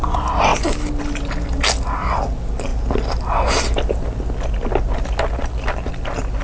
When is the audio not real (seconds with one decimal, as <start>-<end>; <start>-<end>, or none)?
none